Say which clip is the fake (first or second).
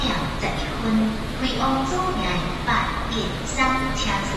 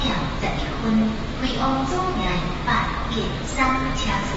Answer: second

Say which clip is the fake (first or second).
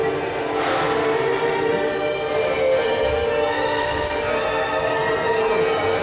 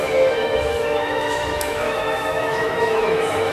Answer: second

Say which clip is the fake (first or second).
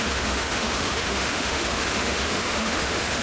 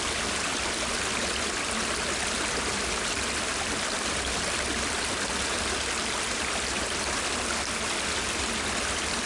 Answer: first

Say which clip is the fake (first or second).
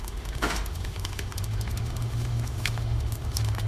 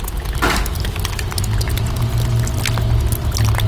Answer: first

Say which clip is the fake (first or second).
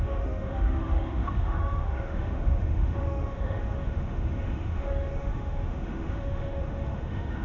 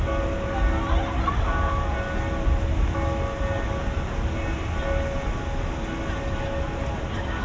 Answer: first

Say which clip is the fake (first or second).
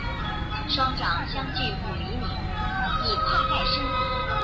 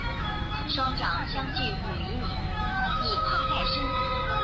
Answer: second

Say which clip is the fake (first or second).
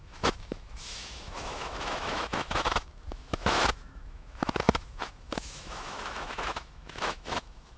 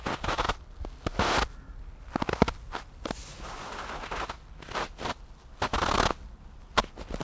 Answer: first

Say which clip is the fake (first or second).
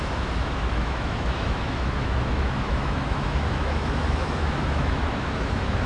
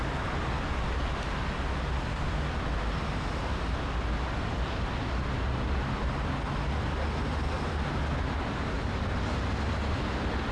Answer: first